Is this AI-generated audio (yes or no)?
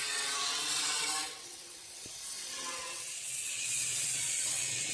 yes